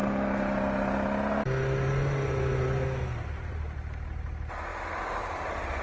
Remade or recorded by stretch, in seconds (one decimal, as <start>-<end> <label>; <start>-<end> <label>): 0.0-5.8 recorded